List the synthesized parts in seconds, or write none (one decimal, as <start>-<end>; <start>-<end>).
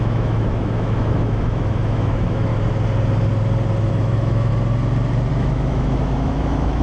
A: 0.0-2.5; 3.9-4.5; 5.3-6.8